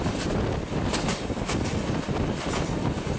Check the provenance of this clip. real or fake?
real